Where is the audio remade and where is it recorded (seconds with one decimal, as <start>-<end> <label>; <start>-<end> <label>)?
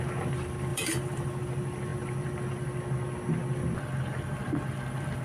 0.0-0.7 recorded; 0.7-1.3 remade; 1.3-5.2 recorded